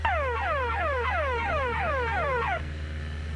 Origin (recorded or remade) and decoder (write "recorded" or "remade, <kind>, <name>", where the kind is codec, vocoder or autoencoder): remade, codec, SNAC